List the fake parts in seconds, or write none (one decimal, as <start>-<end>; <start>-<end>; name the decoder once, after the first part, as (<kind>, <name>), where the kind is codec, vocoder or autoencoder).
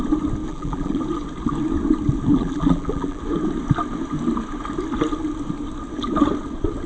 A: 0.5-1.0 (vocoder, BigVGAN v2); 2.3-3.2